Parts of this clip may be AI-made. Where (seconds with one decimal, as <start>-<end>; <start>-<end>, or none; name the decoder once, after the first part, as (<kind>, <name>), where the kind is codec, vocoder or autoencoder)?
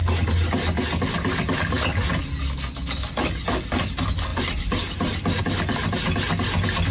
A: none